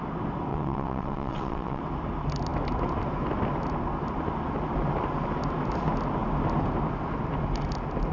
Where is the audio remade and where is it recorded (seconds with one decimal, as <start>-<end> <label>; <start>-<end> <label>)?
0.0-0.5 recorded; 0.5-1.8 remade; 1.8-8.1 recorded